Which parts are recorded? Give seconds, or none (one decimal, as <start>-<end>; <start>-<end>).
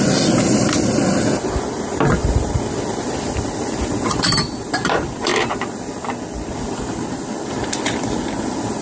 5.3-7.5